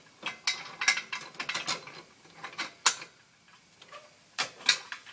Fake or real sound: real